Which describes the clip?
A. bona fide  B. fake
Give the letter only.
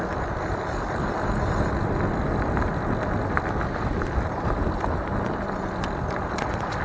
A